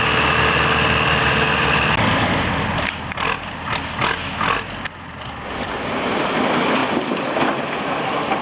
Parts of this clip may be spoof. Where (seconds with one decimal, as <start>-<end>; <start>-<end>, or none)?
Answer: none